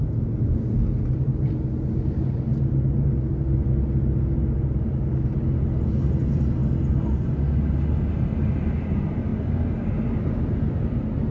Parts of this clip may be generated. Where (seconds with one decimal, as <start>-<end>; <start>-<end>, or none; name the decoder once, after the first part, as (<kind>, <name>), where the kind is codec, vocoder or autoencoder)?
none